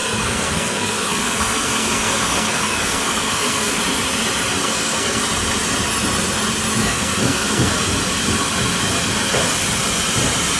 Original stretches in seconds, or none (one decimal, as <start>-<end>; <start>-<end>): 3.8-4.6; 5.2-6.8; 7.7-10.6